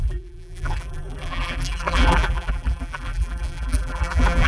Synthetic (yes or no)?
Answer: yes